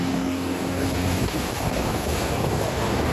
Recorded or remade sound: remade